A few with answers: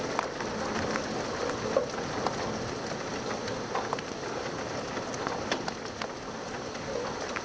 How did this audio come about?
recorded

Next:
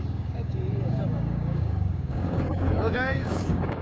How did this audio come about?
remade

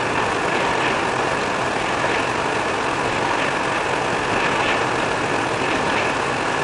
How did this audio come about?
recorded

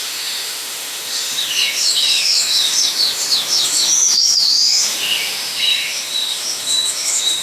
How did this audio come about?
remade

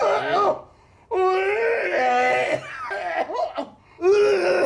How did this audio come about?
recorded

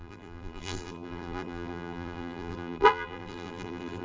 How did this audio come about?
remade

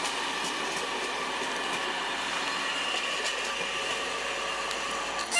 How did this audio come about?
recorded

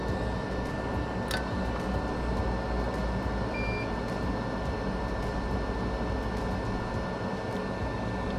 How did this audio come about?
recorded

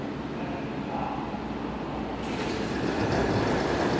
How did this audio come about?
recorded